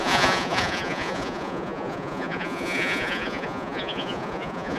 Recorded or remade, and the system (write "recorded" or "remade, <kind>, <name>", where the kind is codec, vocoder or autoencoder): remade, vocoder, Vocos